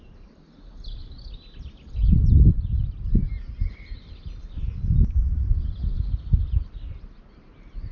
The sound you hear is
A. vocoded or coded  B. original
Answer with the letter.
B